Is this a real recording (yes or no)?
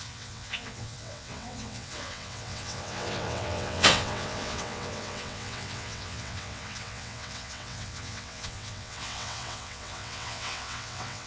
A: no